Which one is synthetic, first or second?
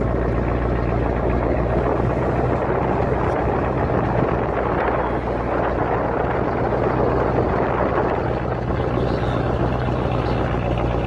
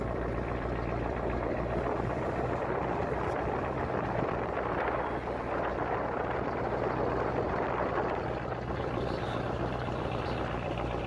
second